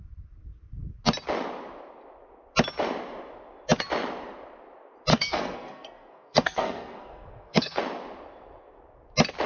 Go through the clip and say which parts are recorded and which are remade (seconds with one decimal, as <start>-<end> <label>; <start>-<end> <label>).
0.0-5.1 recorded; 5.1-7.8 remade; 7.8-9.5 recorded